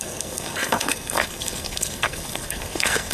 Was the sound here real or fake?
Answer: fake